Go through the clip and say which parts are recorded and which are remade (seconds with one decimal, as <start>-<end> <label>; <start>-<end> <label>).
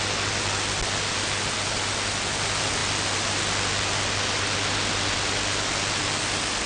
0.0-6.7 recorded